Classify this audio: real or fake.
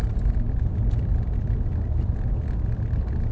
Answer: real